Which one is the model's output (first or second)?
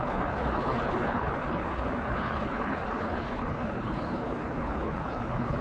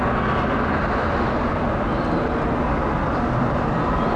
first